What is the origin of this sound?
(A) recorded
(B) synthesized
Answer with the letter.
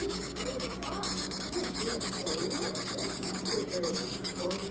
B